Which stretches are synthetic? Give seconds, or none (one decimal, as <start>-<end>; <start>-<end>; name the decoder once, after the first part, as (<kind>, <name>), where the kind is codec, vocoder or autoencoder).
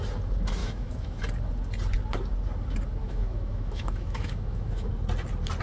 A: 0.6-1.2 (autoencoder, DAC-VAE); 3.0-4.9